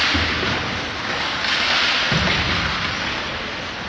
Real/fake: real